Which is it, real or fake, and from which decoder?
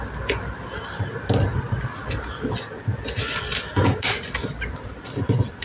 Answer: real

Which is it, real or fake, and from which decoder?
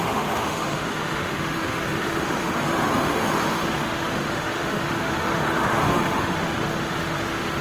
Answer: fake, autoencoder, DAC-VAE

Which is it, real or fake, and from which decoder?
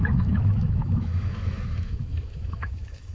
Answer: fake, autoencoder, DAC-VAE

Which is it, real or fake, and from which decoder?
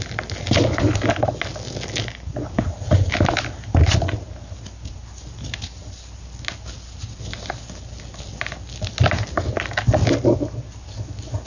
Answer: real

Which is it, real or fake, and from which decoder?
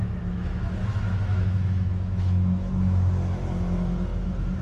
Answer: fake, autoencoder, DAC-VAE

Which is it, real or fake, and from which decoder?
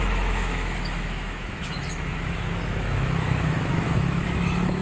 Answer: fake, autoencoder, DAC-VAE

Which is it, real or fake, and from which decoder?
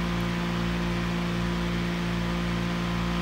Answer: real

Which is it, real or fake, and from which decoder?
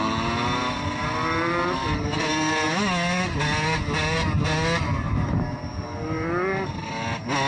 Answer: real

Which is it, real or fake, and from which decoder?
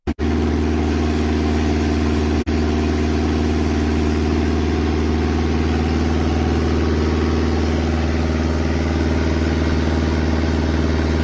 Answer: real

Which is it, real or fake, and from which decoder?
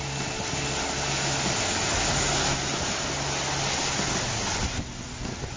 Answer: real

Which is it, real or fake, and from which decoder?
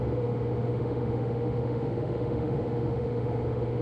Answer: fake, autoencoder, DAC-VAE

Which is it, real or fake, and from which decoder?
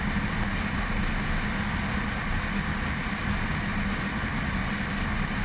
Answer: real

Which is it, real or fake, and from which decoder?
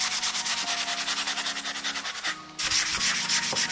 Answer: real